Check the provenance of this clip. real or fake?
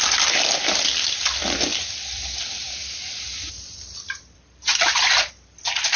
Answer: fake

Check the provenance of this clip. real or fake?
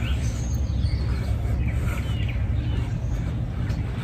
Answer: real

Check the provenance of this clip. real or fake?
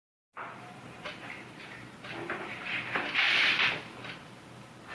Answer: fake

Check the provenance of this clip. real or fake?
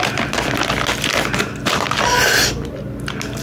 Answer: real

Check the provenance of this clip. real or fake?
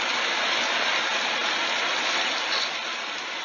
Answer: fake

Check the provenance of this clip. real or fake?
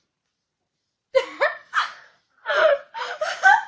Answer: fake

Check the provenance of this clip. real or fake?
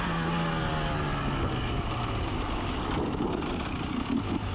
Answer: real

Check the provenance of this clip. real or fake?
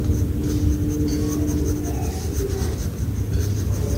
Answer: real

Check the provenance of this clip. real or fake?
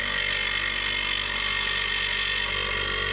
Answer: real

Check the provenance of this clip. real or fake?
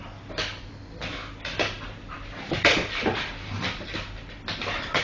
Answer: real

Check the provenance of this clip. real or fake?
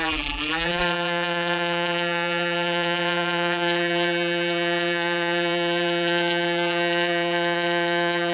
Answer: fake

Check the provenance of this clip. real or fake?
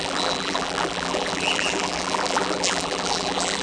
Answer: fake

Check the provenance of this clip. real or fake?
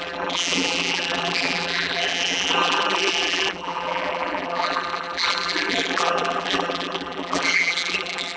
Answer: fake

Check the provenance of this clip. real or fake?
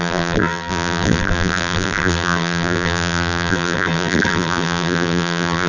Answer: fake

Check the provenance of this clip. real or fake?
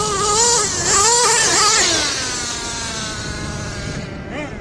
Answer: real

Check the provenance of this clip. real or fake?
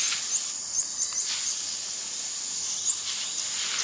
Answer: real